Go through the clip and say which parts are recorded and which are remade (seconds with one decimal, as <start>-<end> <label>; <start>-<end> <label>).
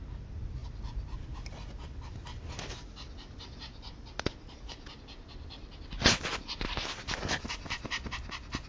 0.0-8.7 recorded